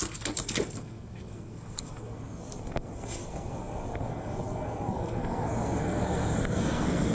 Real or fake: fake